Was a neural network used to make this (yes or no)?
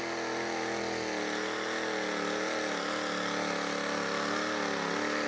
no